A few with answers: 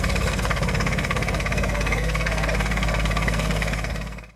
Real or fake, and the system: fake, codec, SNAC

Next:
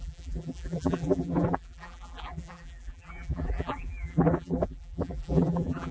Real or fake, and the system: fake, vocoder, BigVGAN v2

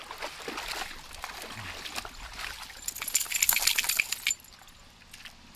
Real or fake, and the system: real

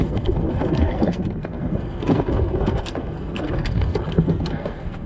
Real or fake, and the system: fake, codec, SNAC